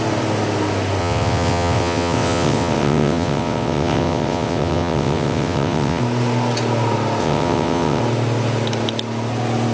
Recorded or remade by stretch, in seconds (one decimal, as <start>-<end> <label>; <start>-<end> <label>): 0.0-1.0 recorded; 1.0-6.0 remade; 6.0-7.2 recorded; 7.2-8.0 remade; 8.0-9.7 recorded